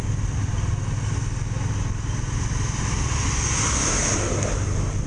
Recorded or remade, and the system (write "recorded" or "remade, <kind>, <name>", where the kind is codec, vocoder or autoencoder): recorded